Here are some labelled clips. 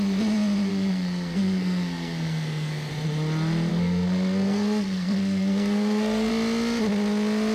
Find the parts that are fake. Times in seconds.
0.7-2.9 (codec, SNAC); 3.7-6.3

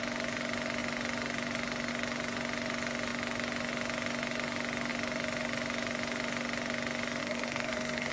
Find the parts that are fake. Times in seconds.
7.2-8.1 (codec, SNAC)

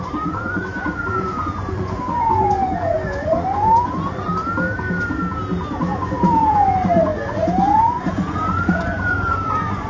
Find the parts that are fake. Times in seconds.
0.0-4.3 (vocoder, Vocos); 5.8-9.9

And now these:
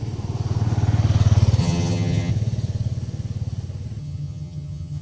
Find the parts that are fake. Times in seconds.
1.6-2.3 (vocoder, HiFi-GAN); 4.0-5.0

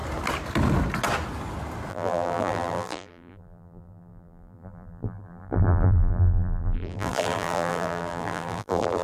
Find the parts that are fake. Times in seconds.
1.9-9.0 (vocoder, BigVGAN v2)

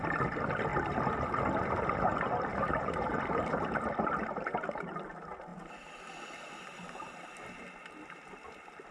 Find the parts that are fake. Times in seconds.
2.5-3.9 (vocoder, BigVGAN v2)

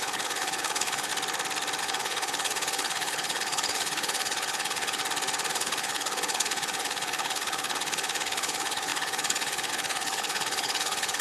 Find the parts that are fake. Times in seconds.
0.0-1.1 (codec, HILCodec); 1.8-5.0; 5.5-11.2